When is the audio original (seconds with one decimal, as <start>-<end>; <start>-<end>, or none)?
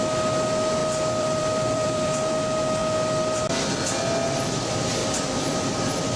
0.0-0.8; 2.3-5.0; 5.7-6.2